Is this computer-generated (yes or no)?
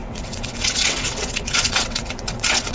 yes